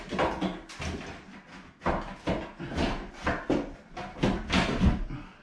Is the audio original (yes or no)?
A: yes